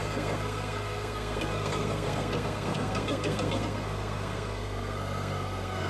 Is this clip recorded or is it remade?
remade